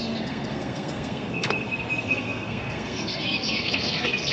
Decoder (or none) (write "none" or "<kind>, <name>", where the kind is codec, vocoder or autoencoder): codec, SNAC